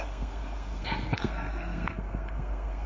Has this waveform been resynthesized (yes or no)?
yes